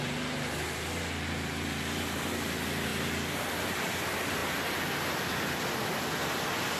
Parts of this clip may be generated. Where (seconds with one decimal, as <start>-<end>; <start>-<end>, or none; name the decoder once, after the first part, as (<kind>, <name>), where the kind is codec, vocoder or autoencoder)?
none